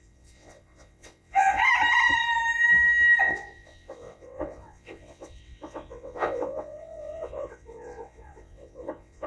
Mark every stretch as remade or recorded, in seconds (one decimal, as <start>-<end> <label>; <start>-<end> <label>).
0.0-1.6 remade; 1.6-3.2 recorded; 3.2-9.3 remade